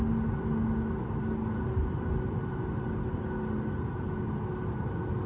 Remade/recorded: recorded